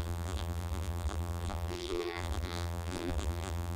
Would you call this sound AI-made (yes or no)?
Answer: yes